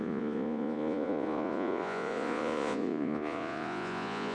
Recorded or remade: remade